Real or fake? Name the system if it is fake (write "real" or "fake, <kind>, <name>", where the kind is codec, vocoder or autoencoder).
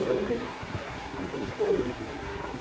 fake, codec, SNAC